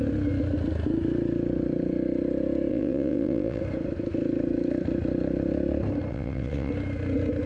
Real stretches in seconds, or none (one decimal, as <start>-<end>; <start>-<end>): 0.0-2.7; 3.6-6.1; 6.7-7.5

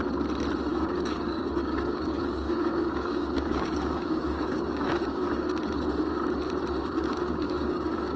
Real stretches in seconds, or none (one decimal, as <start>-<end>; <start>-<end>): 0.0-0.7; 5.6-6.8

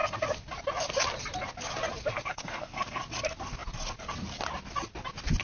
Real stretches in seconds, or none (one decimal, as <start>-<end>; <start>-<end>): 0.0-2.1; 3.0-5.4